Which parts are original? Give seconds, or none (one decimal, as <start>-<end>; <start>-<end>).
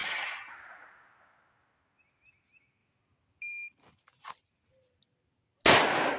0.5-6.2